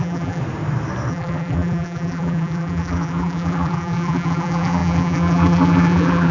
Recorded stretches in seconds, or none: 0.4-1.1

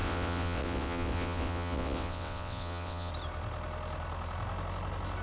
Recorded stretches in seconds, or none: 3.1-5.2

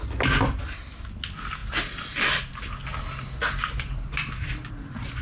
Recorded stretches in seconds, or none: 0.0-5.2

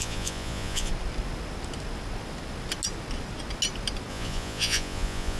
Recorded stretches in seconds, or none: 0.9-4.1

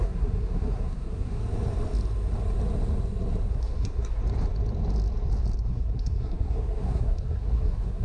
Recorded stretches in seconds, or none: 1.4-3.5; 4.2-5.7

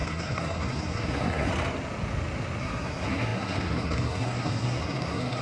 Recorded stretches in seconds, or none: 1.5-2.6

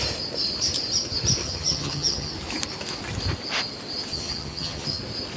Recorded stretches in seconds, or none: 0.0-1.4; 2.3-4.1; 5.0-5.4

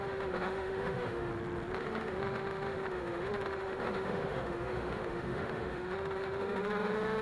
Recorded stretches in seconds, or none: 1.3-1.8